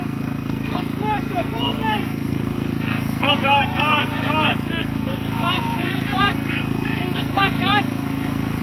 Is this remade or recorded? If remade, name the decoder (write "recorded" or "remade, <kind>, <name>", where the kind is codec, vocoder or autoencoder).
remade, codec, SNAC